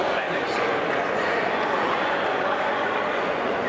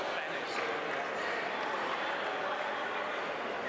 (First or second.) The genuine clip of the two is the second